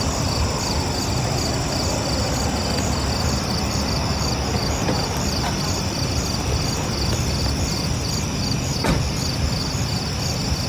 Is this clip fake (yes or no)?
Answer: no